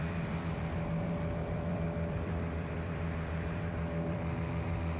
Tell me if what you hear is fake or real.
fake